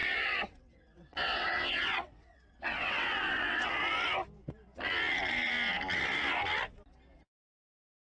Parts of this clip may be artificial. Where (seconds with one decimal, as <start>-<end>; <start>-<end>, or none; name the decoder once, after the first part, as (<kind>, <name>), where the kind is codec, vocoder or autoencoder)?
0.0-3.7 (vocoder, WaveNeXt)